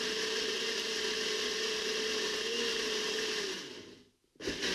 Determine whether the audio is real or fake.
real